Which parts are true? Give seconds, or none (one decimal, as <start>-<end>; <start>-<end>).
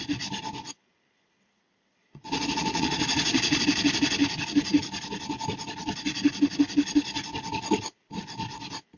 0.0-2.0; 3.6-9.0